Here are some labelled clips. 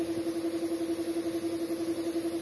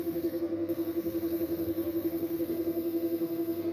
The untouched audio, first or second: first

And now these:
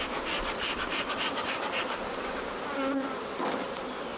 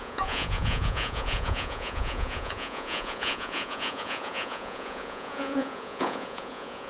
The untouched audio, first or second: first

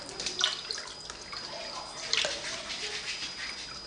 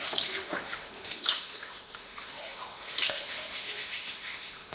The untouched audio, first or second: first